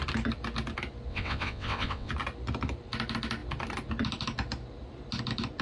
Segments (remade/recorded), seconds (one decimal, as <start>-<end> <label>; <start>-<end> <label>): 0.0-1.1 recorded; 1.1-2.1 remade; 2.1-5.6 recorded